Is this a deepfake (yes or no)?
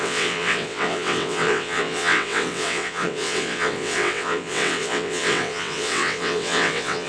yes